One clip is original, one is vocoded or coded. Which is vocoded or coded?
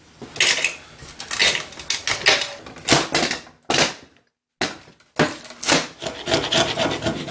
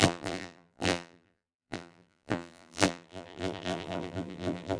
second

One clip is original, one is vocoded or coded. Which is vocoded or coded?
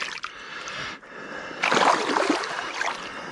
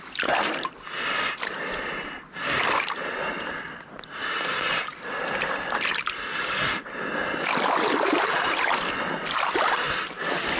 second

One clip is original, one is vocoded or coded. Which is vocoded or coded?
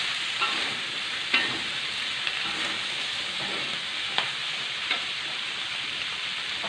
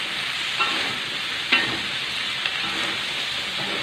first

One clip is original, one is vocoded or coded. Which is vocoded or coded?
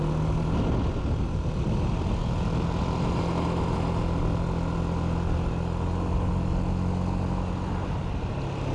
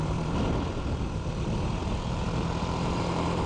second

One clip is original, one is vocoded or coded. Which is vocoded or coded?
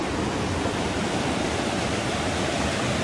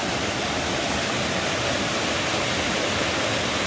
first